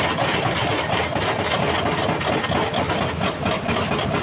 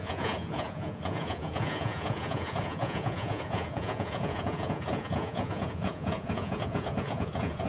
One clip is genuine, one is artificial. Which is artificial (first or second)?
second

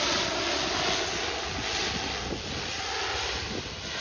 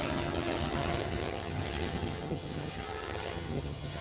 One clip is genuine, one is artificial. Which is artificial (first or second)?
second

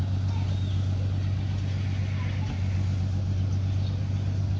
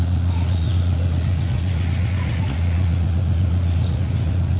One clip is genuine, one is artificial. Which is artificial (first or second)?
second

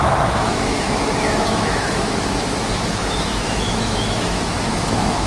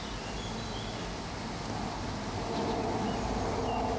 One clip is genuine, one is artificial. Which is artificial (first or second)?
first